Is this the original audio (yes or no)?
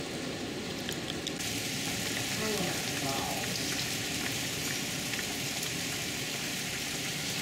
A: yes